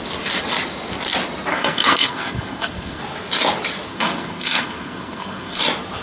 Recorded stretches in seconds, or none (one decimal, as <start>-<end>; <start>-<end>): 0.0-1.5; 3.0-3.9; 5.6-6.0